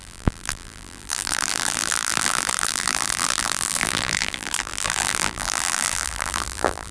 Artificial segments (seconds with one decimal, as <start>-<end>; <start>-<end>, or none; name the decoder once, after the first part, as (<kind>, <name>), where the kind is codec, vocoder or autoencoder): 0.0-6.9 (vocoder, BigVGAN v2)